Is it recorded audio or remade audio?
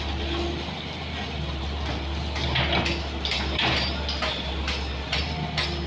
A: recorded